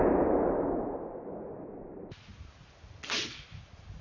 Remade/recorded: recorded